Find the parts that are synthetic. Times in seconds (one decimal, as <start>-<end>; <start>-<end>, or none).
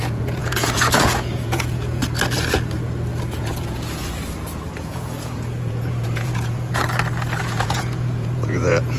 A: 0.0-2.0; 3.4-4.0; 4.8-6.8; 7.4-9.0